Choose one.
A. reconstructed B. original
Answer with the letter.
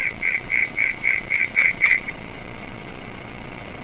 A